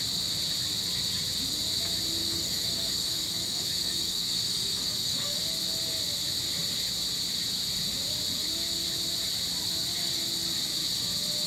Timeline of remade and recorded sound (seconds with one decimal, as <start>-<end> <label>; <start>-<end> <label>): 0.0-2.2 recorded; 2.2-5.4 remade; 5.4-11.5 recorded